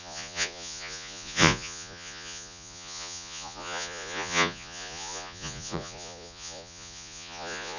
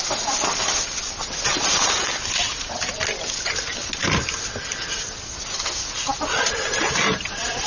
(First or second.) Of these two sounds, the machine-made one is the first